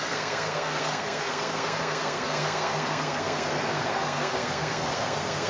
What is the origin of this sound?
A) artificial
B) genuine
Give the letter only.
A